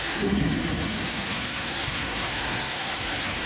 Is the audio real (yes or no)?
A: no